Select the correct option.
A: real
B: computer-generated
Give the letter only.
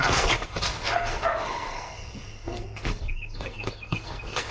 B